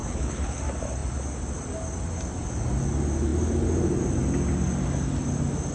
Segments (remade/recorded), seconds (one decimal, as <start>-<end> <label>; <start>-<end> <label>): 0.0-0.6 remade; 0.6-5.7 recorded